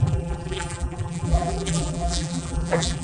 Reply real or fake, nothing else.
fake